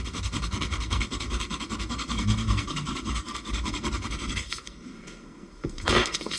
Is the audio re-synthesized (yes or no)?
yes